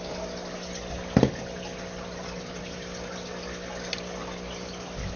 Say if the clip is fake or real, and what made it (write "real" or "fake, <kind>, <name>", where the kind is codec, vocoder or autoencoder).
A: real